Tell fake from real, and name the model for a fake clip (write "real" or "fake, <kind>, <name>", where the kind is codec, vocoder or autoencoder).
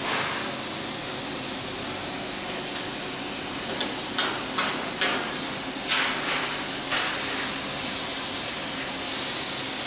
real